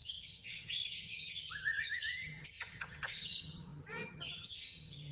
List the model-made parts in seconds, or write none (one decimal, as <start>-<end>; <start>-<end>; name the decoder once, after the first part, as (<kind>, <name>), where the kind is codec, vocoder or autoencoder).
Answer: 0.0-5.1 (vocoder, HiFi-GAN)